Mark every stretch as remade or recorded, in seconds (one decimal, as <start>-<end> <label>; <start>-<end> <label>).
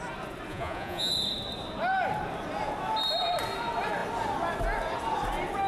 0.0-0.5 recorded; 0.5-1.1 remade; 1.1-5.7 recorded